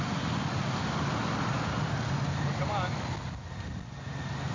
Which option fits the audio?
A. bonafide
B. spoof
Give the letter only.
A